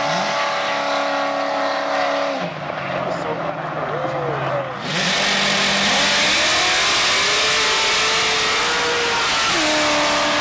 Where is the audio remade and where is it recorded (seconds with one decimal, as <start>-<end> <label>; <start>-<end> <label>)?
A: 0.0-10.4 recorded